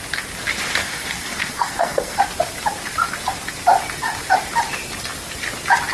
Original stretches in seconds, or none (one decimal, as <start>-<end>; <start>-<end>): 0.0-0.8; 2.2-5.9